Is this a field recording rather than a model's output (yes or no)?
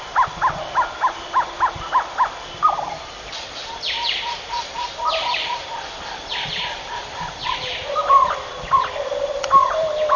no